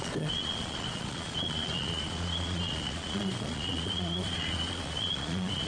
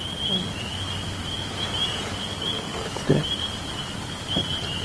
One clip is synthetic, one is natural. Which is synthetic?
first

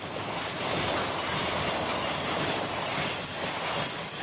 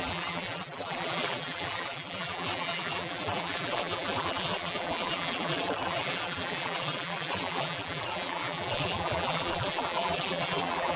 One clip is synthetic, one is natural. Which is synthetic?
second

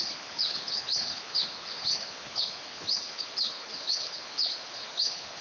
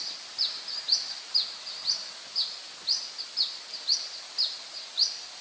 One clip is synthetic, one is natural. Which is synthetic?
first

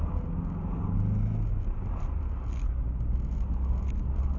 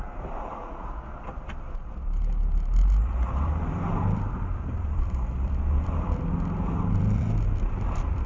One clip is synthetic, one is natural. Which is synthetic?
second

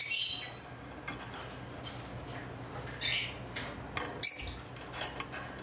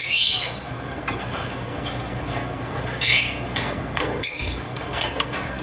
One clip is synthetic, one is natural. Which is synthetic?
second